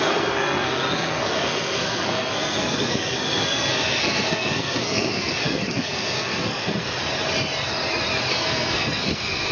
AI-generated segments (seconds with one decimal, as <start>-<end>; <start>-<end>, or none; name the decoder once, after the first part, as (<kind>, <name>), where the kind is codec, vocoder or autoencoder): 0.0-7.0 (codec, SNAC); 8.3-9.5